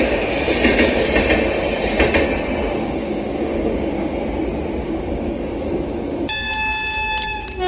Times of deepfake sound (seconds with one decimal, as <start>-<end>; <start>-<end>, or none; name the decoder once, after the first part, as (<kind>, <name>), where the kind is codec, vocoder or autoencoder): 2.8-4.2 (codec, DAC); 4.8-6.5